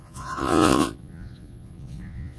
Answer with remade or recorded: remade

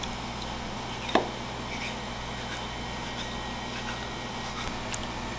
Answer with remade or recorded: recorded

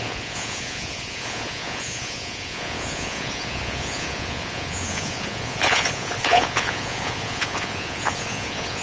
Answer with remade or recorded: remade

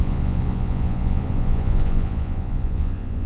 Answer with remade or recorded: remade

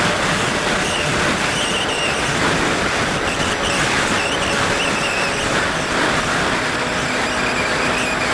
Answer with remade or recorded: recorded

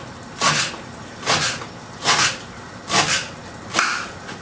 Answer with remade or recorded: recorded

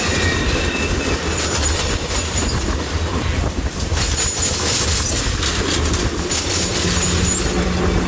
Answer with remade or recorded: recorded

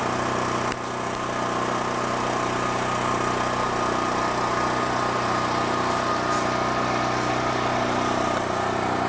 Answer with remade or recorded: recorded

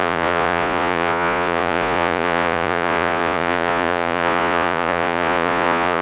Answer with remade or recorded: remade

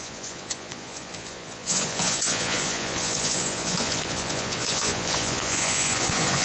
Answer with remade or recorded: remade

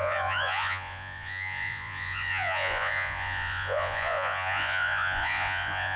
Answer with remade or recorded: remade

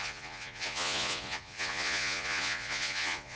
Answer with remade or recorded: remade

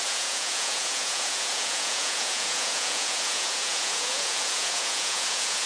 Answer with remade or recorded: remade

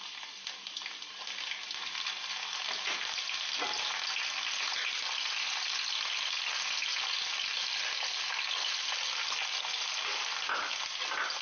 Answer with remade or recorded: recorded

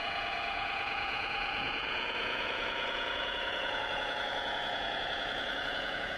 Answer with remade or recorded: remade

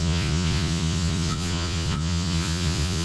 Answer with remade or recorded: remade